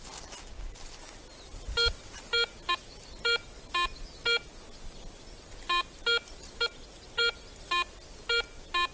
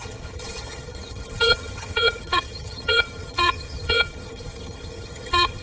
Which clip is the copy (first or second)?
second